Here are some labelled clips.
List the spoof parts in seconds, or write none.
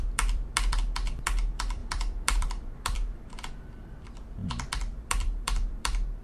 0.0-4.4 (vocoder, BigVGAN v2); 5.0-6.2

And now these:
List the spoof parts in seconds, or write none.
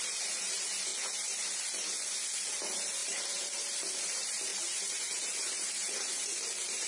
0.0-0.9 (vocoder, BigVGAN v2); 2.5-6.9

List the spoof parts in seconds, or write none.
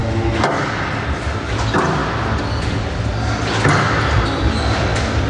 1.4-2.0 (vocoder, BigVGAN v2); 3.7-5.3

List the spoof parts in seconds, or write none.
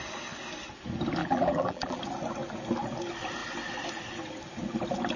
1.2-2.0 (vocoder, BigVGAN v2)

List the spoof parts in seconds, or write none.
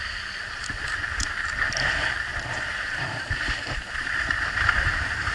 0.8-1.7 (vocoder, BigVGAN v2); 2.3-5.3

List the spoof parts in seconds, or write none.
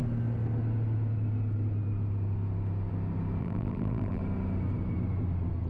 3.4-4.2 (vocoder, BigVGAN v2)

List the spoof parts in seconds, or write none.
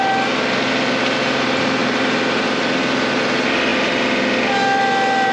1.8-2.6 (vocoder, BigVGAN v2)